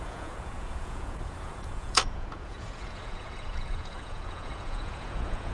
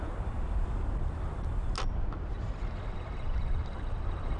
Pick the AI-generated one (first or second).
first